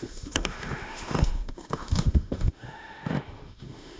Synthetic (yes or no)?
yes